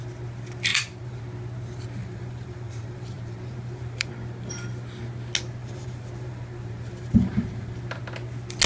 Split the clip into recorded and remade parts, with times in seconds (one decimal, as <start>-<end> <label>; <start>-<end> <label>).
0.0-0.7 recorded; 0.7-1.2 remade; 1.2-2.0 recorded; 2.0-4.1 remade; 4.1-5.6 recorded; 5.6-8.0 remade; 8.0-8.7 recorded